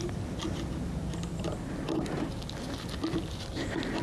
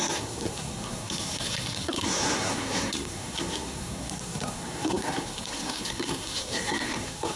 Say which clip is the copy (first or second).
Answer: second